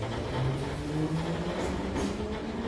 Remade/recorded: recorded